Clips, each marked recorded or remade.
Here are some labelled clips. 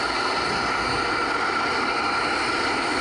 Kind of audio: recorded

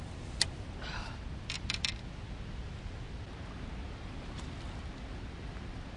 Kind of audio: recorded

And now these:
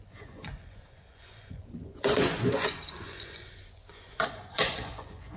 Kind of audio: remade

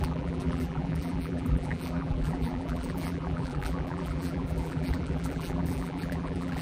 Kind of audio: remade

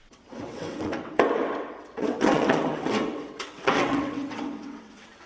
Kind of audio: remade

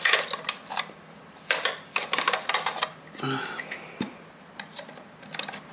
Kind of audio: recorded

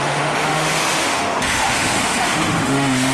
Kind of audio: remade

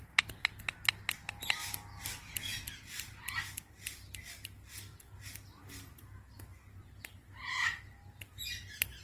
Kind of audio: recorded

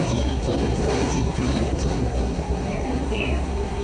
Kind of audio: remade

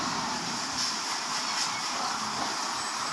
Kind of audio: recorded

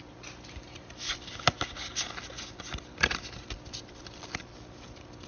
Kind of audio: recorded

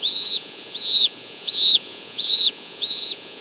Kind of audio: remade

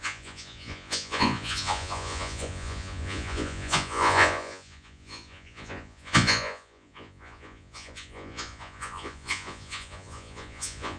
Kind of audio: remade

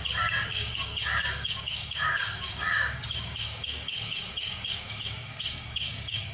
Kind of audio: remade